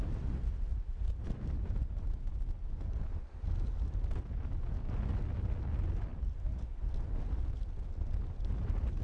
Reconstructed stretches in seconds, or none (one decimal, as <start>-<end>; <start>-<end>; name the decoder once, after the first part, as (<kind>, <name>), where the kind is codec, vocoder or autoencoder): none